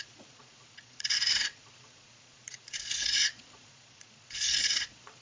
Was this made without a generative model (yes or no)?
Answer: no